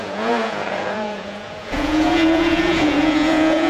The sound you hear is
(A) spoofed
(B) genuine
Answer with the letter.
A